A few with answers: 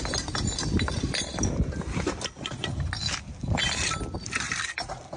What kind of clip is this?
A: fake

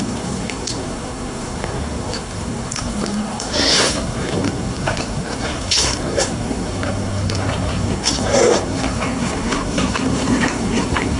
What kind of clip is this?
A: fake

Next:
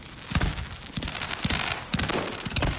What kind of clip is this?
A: real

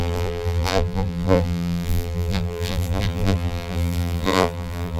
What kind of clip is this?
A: fake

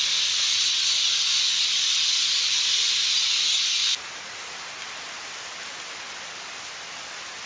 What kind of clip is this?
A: real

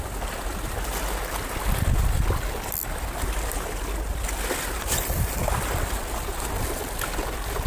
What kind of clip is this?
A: real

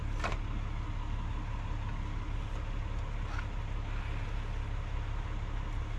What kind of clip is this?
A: real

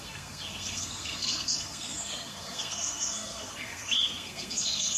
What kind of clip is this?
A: fake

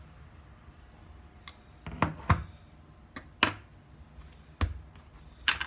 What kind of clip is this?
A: real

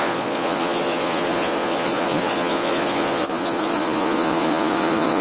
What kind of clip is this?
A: fake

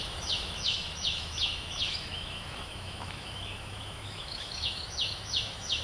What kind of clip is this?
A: fake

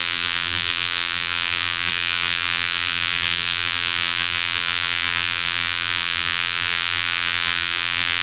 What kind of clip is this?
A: fake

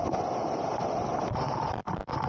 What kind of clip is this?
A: real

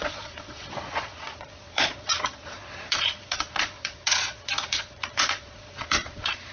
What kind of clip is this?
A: fake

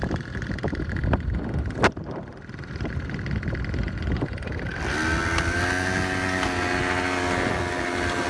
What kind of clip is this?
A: real